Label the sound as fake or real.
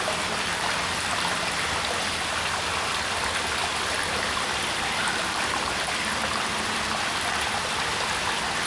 fake